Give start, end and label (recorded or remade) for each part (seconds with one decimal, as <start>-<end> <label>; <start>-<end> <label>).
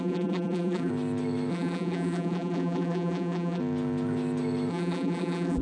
0.0-0.9 remade; 0.9-1.5 recorded; 1.5-3.6 remade; 3.6-4.7 recorded; 4.7-5.6 remade